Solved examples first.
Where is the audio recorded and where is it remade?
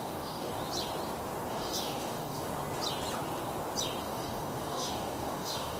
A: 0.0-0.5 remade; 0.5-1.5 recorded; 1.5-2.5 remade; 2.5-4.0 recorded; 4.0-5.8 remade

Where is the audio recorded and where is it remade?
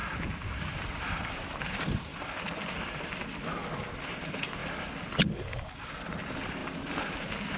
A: 0.0-0.8 recorded; 0.8-2.1 remade; 2.1-3.9 recorded; 3.9-4.6 remade; 4.6-6.0 recorded; 6.0-7.6 remade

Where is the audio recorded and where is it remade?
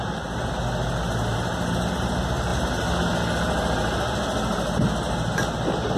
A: 0.0-6.0 recorded